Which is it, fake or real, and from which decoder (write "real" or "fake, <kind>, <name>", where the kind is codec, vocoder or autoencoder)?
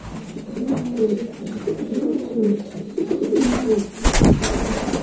real